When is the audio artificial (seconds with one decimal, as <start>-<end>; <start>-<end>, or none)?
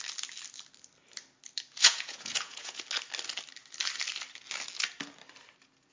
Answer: 1.8-2.8